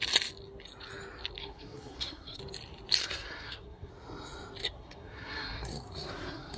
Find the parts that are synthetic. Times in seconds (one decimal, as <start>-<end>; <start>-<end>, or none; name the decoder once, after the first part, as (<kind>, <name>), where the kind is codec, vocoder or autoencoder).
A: 1.4-2.4 (codec, SNAC); 3.0-3.9; 4.6-6.6